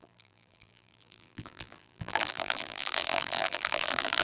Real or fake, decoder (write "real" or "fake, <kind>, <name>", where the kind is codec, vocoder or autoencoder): fake, vocoder, BigVGAN v2